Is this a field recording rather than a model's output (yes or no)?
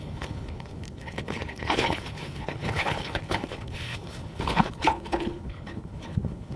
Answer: no